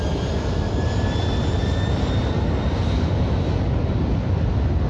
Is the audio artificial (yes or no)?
no